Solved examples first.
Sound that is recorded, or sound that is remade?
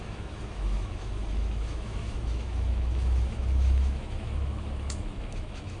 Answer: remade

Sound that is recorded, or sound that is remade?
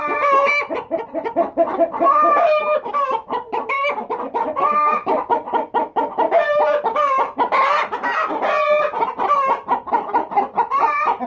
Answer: recorded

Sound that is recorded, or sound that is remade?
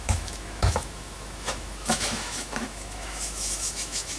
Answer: remade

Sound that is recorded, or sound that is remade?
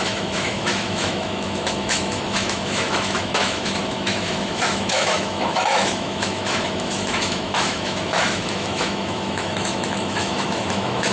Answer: remade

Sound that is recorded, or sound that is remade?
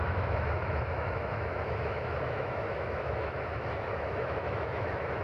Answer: remade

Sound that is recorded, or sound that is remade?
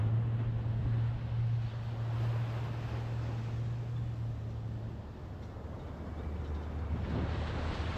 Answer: recorded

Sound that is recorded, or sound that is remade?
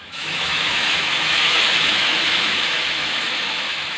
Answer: remade